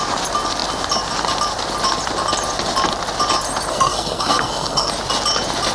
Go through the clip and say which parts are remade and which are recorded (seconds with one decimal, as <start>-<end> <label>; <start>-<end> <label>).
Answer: 0.0-3.7 recorded; 3.7-4.9 remade; 4.9-5.7 recorded